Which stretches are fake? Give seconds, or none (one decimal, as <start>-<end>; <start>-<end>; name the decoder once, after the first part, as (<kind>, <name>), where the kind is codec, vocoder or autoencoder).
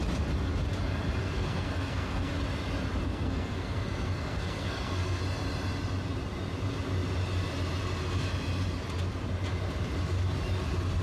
1.2-2.3 (codec, SNAC); 3.0-5.2